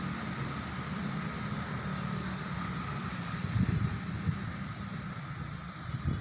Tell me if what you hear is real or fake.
real